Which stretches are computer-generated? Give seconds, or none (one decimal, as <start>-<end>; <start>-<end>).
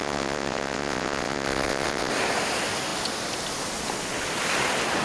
0.0-2.1